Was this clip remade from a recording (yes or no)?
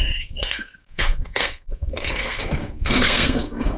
yes